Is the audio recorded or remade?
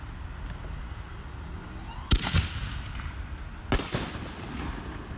recorded